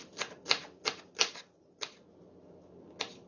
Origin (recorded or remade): recorded